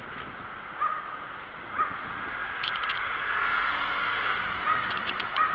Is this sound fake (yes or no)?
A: yes